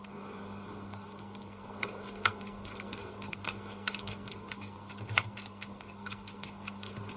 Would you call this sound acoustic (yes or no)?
no